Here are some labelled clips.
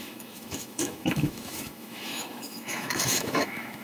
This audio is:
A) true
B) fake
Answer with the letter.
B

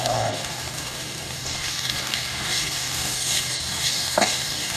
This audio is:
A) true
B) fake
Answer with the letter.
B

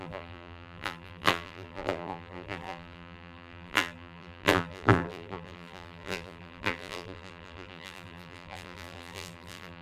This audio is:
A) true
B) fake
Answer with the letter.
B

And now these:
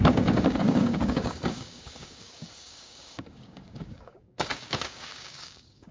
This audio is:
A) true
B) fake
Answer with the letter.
B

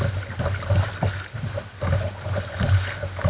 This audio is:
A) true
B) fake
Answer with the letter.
A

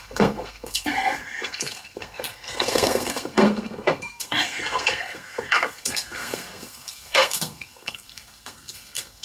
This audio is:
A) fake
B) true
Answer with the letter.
A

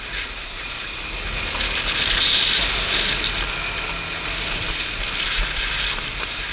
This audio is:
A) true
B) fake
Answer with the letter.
A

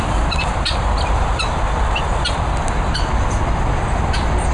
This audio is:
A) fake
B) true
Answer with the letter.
B